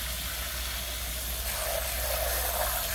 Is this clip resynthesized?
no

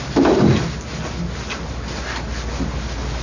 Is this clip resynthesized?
no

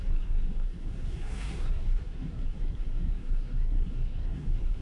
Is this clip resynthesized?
yes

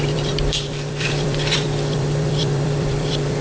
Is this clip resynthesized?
yes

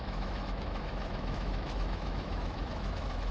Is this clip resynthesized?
yes